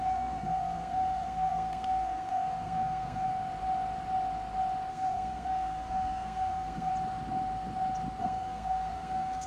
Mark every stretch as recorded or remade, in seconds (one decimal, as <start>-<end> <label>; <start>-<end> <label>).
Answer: 0.0-3.3 remade; 3.3-4.9 recorded; 4.9-6.9 remade; 6.9-8.2 recorded; 8.2-9.5 remade